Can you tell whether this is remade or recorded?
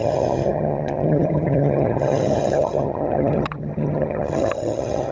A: remade